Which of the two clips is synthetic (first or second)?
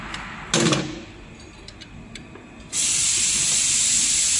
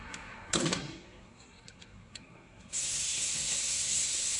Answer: second